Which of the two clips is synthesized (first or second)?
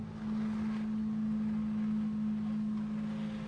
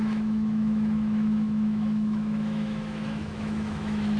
second